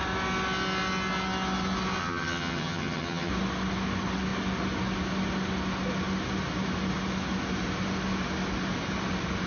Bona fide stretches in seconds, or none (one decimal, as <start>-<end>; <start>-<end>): 0.0-2.0; 3.3-9.5